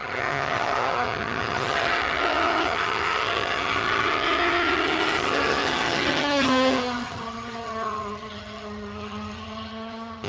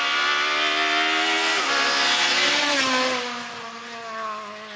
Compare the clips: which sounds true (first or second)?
second